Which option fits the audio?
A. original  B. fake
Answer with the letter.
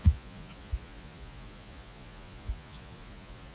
B